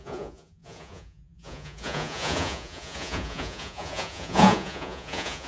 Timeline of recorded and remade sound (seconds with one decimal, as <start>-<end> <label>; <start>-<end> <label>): 0.0-5.5 remade